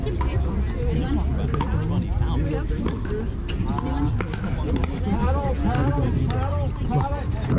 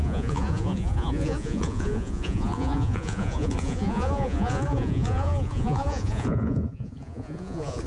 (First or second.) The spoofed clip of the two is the second